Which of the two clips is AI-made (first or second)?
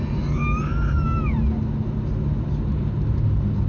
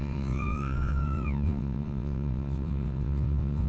second